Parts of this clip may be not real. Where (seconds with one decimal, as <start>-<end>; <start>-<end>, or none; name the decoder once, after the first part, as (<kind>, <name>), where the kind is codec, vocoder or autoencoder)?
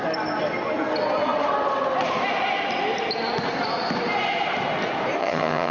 5.2-5.7 (vocoder, HiFi-GAN)